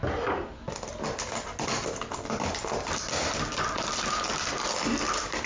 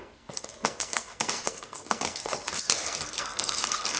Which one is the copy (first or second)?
second